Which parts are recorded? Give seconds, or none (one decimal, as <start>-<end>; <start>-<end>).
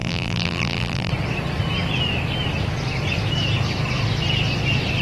1.1-5.0